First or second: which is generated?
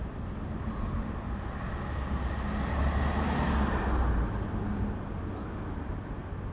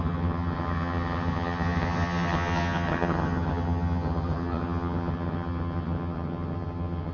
second